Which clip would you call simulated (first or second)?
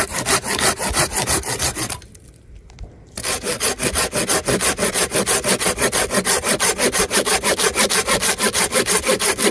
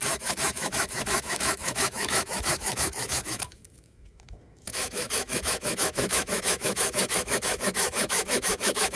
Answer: second